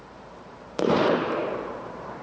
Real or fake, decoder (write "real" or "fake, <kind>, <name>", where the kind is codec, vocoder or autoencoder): fake, vocoder, BigVGAN v2